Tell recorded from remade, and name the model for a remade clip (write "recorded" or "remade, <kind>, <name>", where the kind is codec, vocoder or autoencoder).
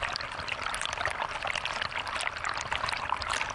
recorded